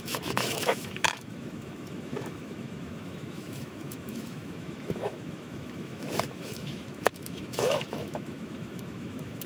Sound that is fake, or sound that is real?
fake